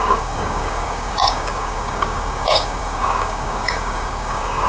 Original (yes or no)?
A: no